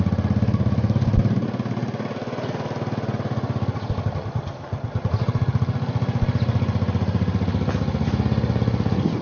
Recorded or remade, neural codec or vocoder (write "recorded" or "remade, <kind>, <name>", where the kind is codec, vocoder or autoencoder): recorded